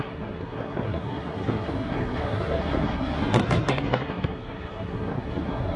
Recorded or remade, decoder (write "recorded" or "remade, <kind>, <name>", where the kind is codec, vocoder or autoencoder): remade, codec, SNAC